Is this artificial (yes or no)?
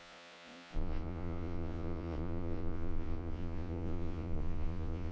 yes